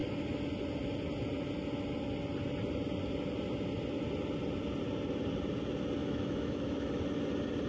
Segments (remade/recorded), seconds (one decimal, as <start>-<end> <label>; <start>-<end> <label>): 0.0-6.0 recorded; 6.0-7.0 remade; 7.0-7.7 recorded